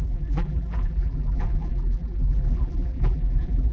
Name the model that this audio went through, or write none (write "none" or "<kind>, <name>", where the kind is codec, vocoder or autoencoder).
vocoder, BigVGAN v2